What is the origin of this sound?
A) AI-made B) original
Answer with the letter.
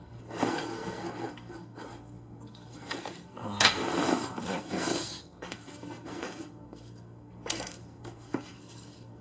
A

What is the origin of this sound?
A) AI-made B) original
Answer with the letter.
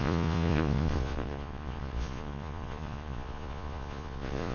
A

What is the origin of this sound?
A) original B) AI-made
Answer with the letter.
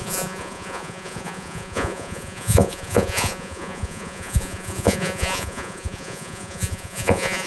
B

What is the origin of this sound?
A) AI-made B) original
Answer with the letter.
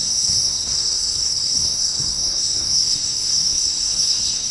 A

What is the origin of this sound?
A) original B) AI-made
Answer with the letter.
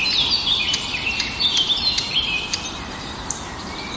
B